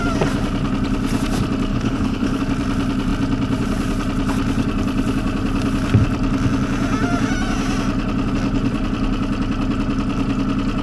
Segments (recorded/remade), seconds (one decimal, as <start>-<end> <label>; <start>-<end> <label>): 0.0-1.7 recorded; 1.7-2.4 remade; 2.4-10.8 recorded